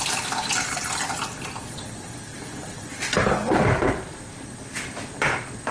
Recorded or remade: remade